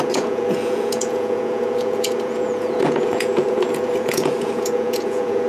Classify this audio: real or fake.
fake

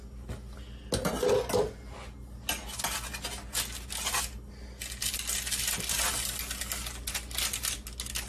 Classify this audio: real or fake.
real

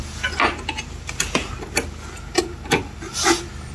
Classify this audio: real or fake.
real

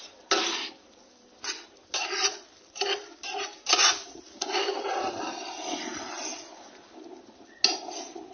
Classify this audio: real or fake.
real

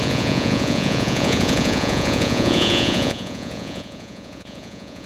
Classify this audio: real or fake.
fake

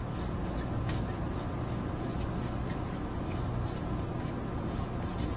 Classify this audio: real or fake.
real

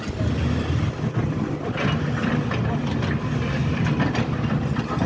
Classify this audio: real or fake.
real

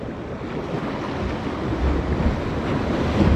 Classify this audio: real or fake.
real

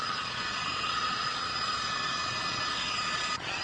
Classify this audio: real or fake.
fake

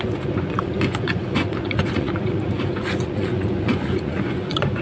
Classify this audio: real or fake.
fake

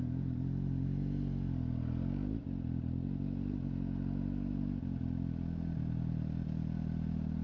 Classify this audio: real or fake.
real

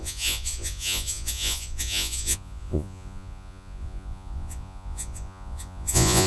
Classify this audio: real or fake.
fake